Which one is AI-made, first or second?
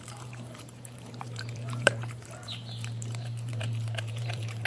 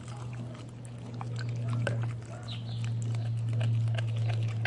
first